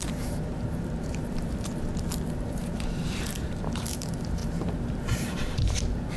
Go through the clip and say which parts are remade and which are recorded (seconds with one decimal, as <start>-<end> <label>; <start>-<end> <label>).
0.0-1.9 remade; 1.9-2.6 recorded; 2.6-6.2 remade